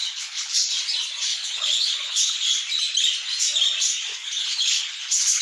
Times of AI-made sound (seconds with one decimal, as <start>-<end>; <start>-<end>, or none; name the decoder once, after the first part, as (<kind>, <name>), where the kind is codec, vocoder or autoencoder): 0.0-0.7 (codec, HILCodec); 1.3-2.5; 4.1-5.4